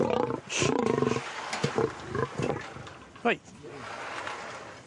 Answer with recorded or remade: recorded